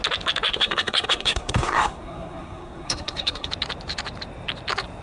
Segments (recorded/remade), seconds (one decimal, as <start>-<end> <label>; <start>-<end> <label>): 0.0-0.5 recorded; 0.5-3.5 remade; 3.5-5.0 recorded